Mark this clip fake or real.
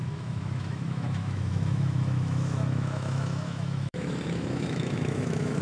fake